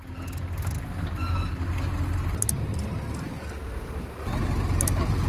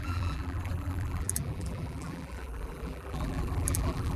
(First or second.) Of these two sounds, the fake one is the second